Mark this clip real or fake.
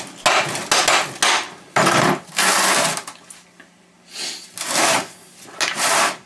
real